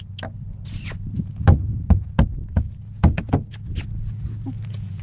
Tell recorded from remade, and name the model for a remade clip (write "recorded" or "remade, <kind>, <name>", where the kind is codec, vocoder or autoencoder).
recorded